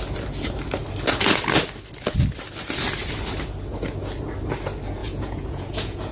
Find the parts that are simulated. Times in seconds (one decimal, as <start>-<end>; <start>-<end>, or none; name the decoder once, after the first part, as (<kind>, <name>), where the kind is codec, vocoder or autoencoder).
5.0-6.1 (vocoder, Vocos)